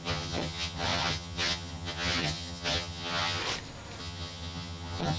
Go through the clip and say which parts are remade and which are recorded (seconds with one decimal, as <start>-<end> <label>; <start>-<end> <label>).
0.0-3.4 remade; 3.4-4.0 recorded; 4.0-5.2 remade